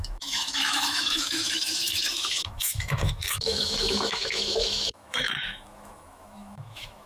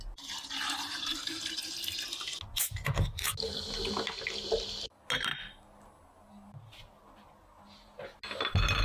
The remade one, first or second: first